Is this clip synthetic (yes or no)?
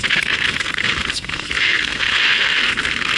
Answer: yes